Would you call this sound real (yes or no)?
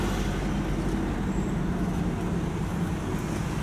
yes